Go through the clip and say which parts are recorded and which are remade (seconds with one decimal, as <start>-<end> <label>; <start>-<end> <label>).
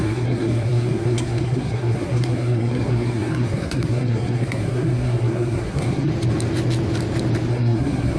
0.0-6.1 remade; 6.1-7.5 recorded; 7.5-8.2 remade